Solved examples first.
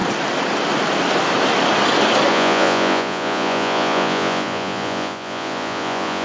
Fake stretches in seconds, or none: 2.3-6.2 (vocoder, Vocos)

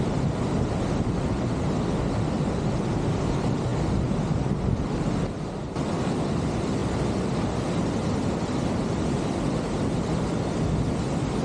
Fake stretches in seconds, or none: none

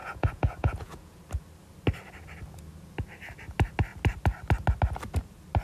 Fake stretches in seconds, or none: 0.0-1.2 (vocoder, Vocos)

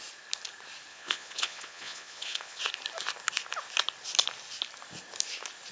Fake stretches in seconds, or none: 0.9-2.6 (vocoder, Vocos)

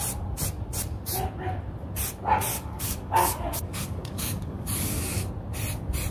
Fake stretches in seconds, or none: 2.5-5.3 (codec, DAC)

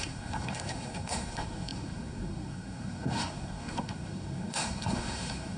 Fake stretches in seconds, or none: 0.0-5.6 (codec, SNAC)